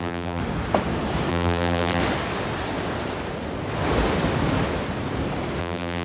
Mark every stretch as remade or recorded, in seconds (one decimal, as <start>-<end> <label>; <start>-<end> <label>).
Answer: 0.0-0.4 remade; 0.4-1.3 recorded; 1.3-2.0 remade; 2.0-5.6 recorded; 5.6-6.0 remade